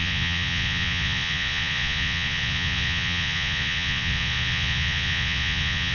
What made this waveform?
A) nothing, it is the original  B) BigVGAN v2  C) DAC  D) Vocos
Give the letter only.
D